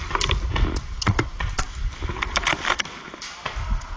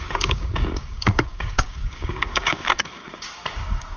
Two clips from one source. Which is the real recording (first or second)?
first